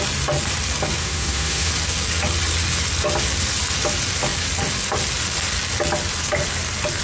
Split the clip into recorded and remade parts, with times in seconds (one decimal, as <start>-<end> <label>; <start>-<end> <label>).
0.0-1.0 recorded; 1.0-1.7 remade; 1.7-7.0 recorded